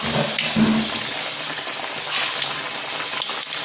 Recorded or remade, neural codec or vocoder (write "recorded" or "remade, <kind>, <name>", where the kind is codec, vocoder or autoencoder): recorded